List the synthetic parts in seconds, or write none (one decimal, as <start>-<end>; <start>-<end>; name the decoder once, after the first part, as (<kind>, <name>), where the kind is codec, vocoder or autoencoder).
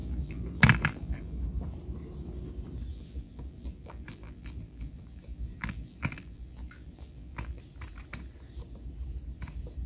0.0-1.4 (vocoder, BigVGAN v2); 2.9-7.6